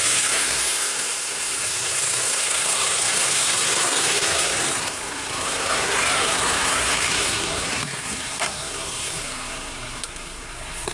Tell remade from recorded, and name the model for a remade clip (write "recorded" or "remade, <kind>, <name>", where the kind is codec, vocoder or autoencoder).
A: remade, codec, SNAC